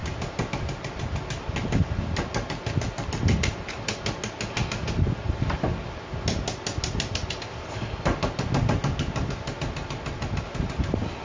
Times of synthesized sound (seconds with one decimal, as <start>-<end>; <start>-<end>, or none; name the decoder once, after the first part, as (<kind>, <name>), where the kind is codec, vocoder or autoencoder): none